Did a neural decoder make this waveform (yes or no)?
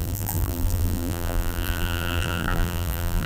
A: yes